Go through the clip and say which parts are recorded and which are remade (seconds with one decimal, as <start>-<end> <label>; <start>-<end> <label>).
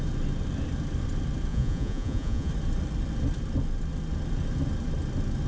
0.0-1.5 recorded; 1.5-2.5 remade; 2.5-5.5 recorded